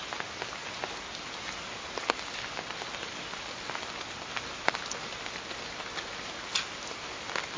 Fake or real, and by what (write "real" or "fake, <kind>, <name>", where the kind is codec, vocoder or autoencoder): real